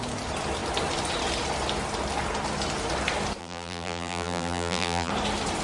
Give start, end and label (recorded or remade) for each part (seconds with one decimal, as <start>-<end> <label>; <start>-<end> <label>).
0.0-3.4 recorded; 3.4-5.1 remade; 5.1-5.6 recorded